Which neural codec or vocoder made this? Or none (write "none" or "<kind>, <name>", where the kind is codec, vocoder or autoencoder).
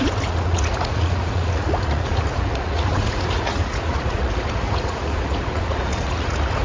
vocoder, Vocos